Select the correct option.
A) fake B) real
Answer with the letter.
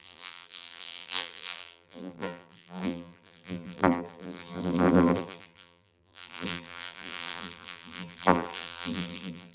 A